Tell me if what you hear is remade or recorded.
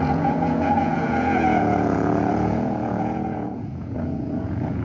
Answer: remade